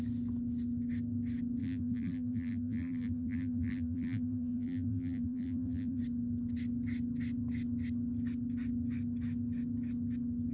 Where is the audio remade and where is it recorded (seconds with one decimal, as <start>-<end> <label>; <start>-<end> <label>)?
0.0-1.6 recorded; 1.6-6.0 remade; 6.0-10.5 recorded